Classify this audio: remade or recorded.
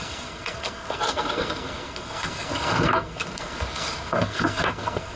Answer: remade